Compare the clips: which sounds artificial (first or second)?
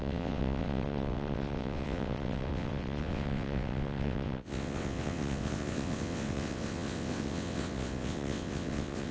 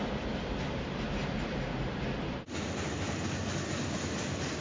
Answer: first